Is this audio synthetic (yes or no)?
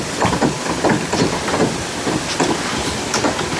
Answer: no